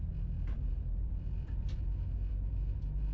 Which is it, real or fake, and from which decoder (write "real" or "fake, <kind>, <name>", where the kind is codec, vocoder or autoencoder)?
real